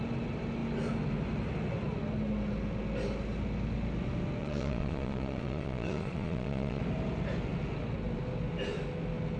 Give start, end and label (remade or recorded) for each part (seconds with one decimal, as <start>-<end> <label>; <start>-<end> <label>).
0.0-4.4 recorded; 4.4-6.8 remade; 6.8-9.4 recorded

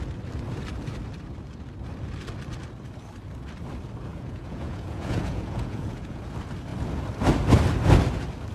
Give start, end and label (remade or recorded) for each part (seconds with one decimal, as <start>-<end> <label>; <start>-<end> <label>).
0.0-4.1 recorded; 4.1-6.2 remade; 6.2-8.5 recorded